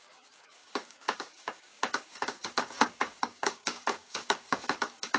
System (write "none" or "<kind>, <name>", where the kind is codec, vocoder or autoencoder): codec, DAC